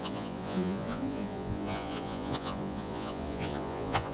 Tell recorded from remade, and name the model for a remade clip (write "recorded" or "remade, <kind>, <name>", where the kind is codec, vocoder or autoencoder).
remade, vocoder, Vocos